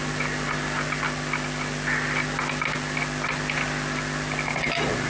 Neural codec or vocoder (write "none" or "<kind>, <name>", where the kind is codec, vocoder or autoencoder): none